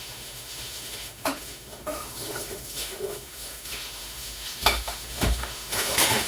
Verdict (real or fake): fake